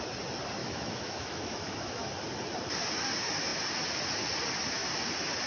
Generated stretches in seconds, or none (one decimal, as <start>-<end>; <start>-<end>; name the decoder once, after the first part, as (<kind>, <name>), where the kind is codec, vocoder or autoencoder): 0.6-2.1 (autoencoder, DAC-VAE)

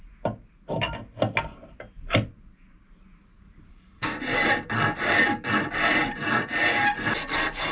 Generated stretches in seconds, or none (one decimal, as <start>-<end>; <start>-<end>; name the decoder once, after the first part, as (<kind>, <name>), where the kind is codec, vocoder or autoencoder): 3.7-4.2 (codec, SNAC)